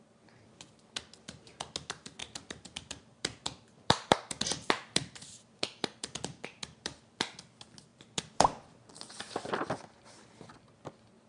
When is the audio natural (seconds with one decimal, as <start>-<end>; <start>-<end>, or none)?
0.0-2.2; 7.2-7.9; 10.3-11.3